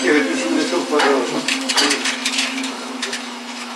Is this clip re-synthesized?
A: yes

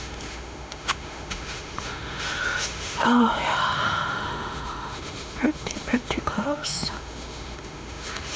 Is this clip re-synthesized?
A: yes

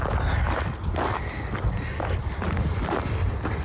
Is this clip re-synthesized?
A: no